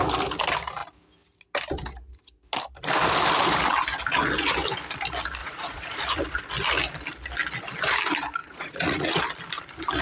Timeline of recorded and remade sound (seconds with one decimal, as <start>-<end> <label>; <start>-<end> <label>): 0.0-5.4 recorded; 5.4-6.0 remade; 6.0-8.4 recorded; 8.4-9.2 remade; 9.2-10.0 recorded